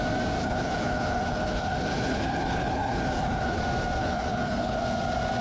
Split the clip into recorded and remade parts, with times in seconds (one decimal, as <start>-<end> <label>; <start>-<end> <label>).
0.0-0.4 recorded; 0.4-3.6 remade; 3.6-4.0 recorded; 4.0-4.8 remade; 4.8-5.4 recorded